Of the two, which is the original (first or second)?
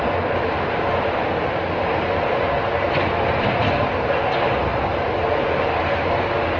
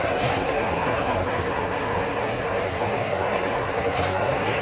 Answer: first